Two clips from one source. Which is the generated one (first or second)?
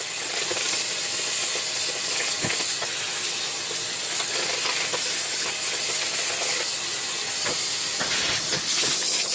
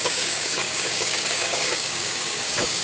second